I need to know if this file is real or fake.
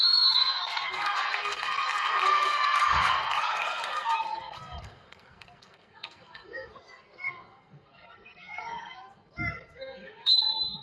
fake